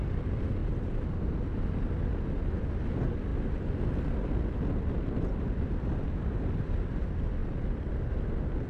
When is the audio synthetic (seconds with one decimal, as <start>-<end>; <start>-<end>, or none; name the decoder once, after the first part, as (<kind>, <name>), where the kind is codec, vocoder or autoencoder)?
7.4-7.9 (vocoder, BigVGAN v2)